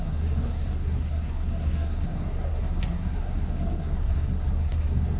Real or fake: fake